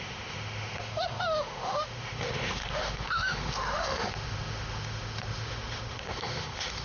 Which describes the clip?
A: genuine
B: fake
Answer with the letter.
B